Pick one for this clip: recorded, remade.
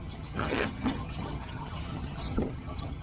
remade